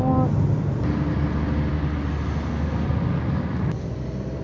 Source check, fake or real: real